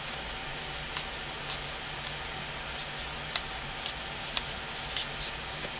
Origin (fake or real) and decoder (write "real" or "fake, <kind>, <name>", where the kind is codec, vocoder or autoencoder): real